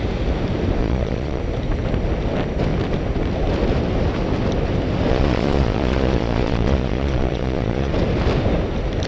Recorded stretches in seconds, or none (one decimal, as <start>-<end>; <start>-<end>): 0.0-0.8; 1.4-5.1; 7.9-9.1